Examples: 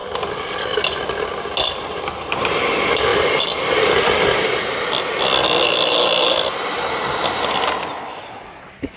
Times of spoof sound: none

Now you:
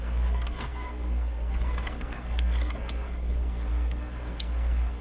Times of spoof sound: 0.0-5.0

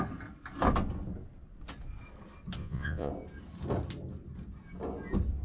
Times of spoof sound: 2.6-3.1

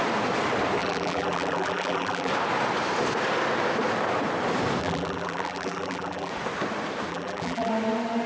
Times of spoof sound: 0.8-2.3; 4.8-6.3; 7.1-7.7